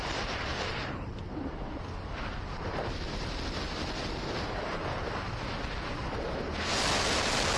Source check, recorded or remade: recorded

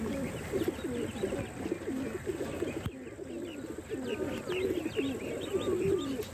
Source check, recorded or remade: recorded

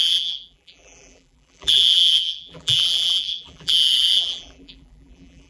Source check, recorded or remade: remade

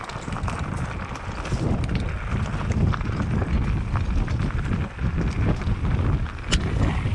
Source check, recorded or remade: recorded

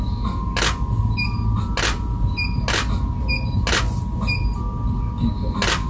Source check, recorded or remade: recorded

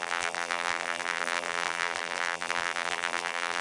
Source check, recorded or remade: remade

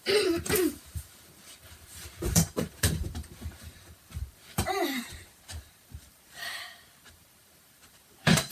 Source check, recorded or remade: remade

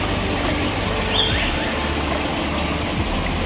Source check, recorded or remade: recorded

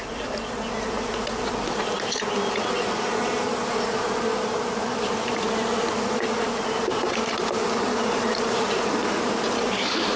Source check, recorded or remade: remade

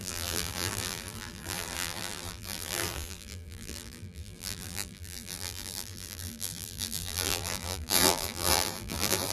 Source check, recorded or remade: remade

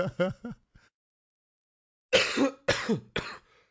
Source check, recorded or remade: recorded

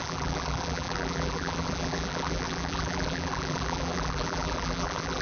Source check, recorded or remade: remade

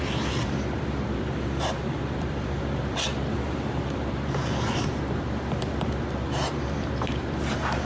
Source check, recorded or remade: remade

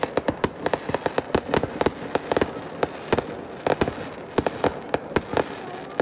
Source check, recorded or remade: recorded